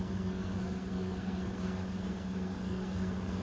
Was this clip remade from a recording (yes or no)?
yes